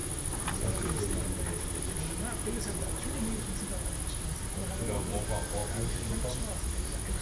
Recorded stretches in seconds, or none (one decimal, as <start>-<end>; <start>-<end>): 0.0-7.2